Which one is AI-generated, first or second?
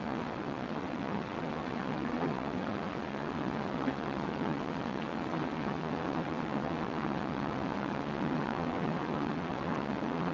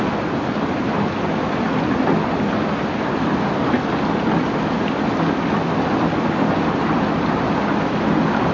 first